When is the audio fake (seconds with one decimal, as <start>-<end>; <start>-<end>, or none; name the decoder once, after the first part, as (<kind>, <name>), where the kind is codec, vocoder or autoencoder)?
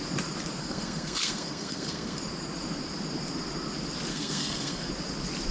0.6-2.2 (codec, SNAC); 4.1-4.9